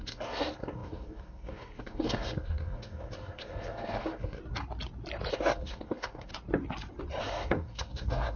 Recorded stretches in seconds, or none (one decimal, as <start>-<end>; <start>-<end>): 4.4-5.3; 6.3-7.2